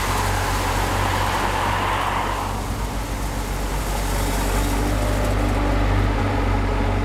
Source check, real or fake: real